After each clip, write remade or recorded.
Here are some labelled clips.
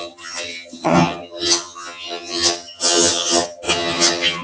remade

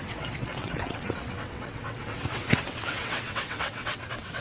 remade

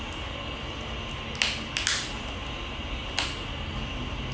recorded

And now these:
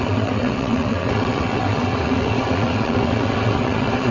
remade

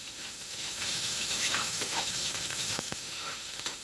remade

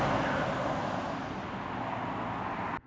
recorded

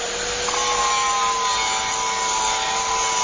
recorded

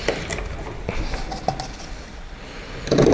recorded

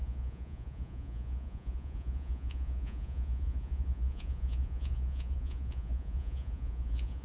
remade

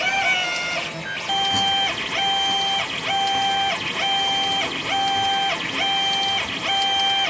recorded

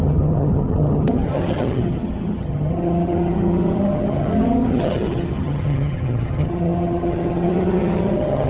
remade